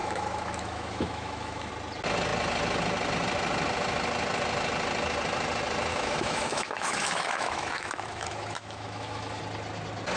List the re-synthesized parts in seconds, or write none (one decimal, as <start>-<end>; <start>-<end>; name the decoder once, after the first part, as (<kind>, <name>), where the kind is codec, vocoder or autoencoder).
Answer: 0.0-1.7 (autoencoder, DAC-VAE); 5.9-9.4